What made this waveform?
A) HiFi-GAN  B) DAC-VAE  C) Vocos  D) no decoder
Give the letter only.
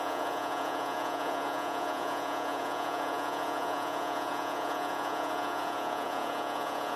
C